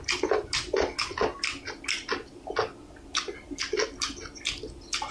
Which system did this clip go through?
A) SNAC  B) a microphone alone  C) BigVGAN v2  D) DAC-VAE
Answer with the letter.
B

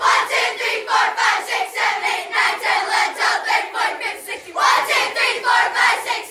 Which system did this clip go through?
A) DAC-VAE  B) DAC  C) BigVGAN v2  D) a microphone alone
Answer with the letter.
C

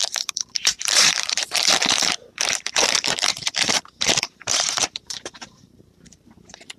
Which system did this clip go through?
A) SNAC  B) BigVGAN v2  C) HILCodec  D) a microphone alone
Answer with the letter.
B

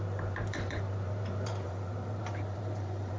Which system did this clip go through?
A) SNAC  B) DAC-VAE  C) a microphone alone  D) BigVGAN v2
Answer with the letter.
D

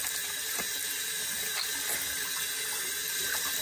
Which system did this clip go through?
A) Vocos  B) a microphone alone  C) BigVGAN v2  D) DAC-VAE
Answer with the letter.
B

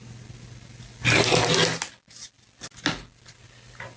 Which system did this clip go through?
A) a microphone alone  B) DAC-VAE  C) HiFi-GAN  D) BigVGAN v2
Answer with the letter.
A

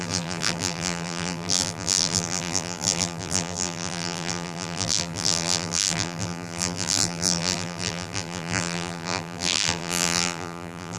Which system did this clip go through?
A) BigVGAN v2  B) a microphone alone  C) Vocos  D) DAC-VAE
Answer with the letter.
A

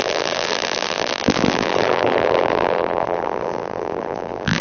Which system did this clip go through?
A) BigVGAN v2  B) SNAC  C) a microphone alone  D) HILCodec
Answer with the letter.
A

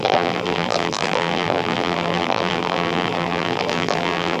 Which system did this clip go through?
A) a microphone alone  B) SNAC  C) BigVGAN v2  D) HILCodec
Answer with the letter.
C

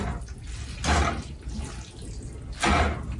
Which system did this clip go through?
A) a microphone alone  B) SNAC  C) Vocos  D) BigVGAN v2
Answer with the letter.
A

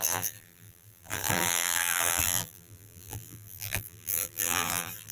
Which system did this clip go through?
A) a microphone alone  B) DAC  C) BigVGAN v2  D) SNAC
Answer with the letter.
C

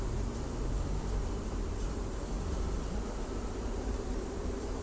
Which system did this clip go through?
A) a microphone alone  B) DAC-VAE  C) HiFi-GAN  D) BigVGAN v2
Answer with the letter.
D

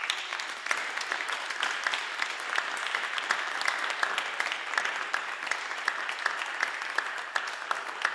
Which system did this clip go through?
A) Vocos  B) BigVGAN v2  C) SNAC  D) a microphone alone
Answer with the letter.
B